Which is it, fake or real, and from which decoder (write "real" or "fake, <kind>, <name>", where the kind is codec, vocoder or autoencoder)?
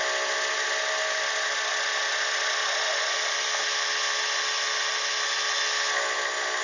real